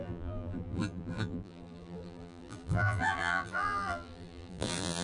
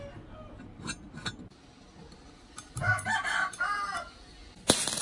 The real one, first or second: second